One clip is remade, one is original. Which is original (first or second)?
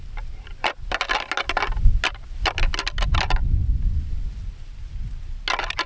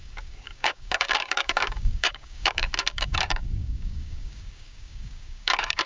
first